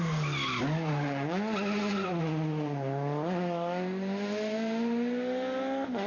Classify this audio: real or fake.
real